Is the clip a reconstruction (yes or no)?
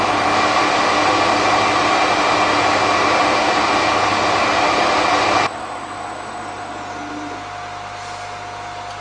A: no